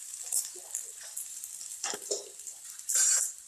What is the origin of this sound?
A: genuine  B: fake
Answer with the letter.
B